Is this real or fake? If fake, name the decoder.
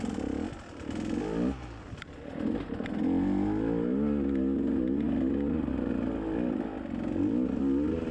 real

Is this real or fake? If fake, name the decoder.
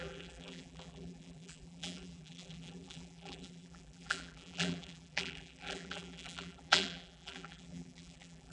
fake, vocoder, BigVGAN v2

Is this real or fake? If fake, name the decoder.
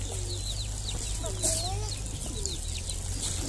real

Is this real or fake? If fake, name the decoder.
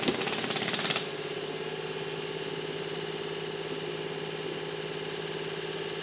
real